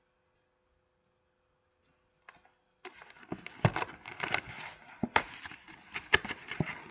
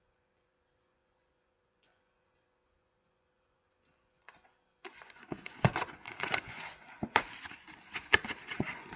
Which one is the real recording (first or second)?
first